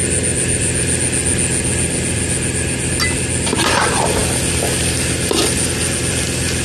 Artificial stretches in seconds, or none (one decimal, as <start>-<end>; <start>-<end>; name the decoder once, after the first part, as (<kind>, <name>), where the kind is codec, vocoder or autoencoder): none